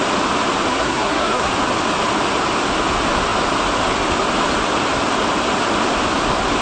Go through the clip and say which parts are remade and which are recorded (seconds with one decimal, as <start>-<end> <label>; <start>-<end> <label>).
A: 0.0-0.7 recorded; 0.7-1.5 remade; 1.5-6.6 recorded